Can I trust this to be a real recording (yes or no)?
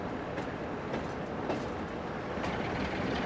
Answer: yes